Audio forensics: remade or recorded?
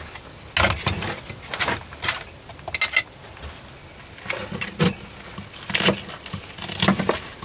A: recorded